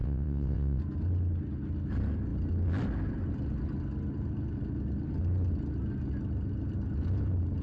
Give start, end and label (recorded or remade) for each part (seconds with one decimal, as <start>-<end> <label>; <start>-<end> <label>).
0.0-0.8 remade; 0.8-7.6 recorded